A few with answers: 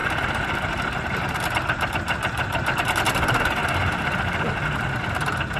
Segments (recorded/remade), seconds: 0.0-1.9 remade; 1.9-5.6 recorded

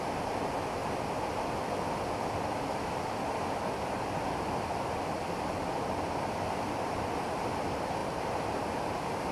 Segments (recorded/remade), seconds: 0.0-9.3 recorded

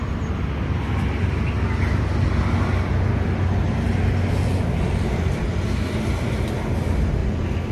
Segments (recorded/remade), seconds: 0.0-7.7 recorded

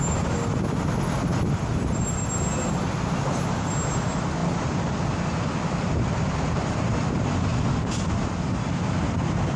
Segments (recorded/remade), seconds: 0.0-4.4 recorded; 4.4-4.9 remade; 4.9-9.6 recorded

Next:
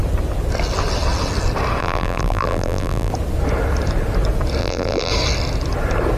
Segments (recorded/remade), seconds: 0.0-1.8 recorded; 1.8-3.1 remade; 3.1-4.6 recorded; 4.6-5.1 remade; 5.1-6.2 recorded

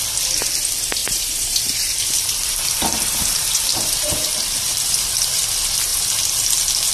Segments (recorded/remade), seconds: 0.0-1.0 recorded; 1.0-5.1 remade; 5.1-6.9 recorded

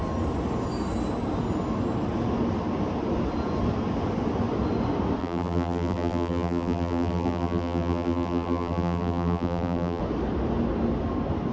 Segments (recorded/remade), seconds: 0.0-5.2 recorded; 5.2-10.0 remade; 10.0-11.5 recorded

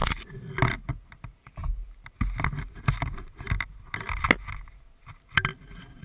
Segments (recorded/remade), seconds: 0.0-6.0 recorded